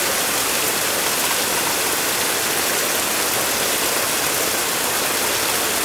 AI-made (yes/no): no